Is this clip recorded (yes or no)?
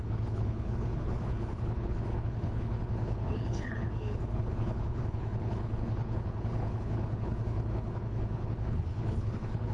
no